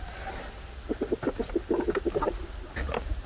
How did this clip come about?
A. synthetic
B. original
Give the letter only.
B